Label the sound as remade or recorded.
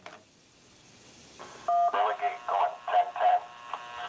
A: recorded